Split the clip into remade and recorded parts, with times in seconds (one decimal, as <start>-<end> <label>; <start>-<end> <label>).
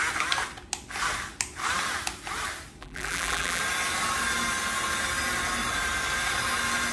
0.0-2.8 recorded; 2.8-3.6 remade; 3.6-6.9 recorded